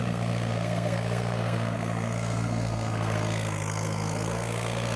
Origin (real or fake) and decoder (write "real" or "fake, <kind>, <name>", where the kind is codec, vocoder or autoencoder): fake, codec, SNAC